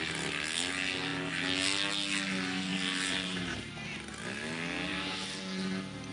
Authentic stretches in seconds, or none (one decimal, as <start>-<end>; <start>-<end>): 0.0-2.7; 3.7-4.9; 5.4-6.1